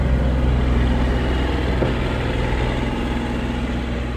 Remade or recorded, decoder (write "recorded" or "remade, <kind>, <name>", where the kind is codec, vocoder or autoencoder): recorded